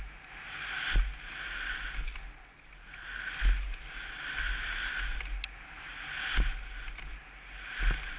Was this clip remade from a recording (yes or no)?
no